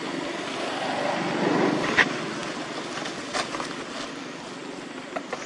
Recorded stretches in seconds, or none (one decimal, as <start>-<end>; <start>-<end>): 0.0-5.5